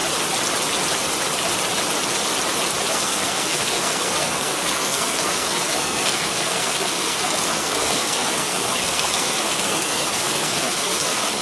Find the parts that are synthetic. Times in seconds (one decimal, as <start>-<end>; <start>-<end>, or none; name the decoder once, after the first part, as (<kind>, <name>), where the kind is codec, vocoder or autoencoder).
2.9-11.4 (codec, SNAC)